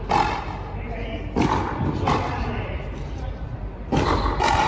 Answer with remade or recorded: recorded